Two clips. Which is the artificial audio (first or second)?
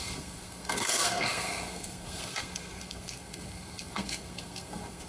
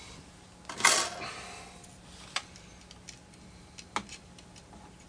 first